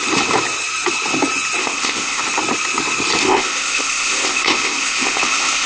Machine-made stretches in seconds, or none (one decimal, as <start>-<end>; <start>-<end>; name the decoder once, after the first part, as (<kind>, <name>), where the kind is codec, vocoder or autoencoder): 1.6-2.2 (codec, ZipCodec); 3.2-5.7